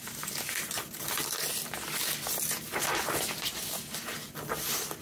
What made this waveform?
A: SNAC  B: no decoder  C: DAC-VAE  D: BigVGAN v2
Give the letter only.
B